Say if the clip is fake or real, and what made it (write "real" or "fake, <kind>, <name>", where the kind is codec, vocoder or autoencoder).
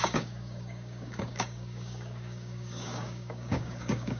fake, codec, DAC